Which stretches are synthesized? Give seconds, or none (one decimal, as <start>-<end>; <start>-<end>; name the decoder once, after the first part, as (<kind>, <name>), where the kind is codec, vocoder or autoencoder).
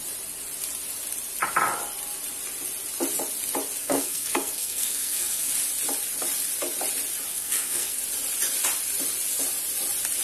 3.8-5.5 (codec, SNAC); 7.3-8.0